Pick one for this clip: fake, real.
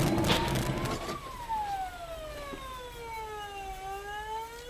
real